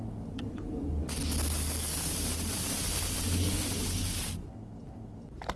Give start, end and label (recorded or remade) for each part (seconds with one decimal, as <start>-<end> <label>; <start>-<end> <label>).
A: 0.0-5.6 recorded